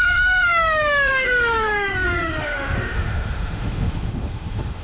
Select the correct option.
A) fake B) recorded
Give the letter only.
A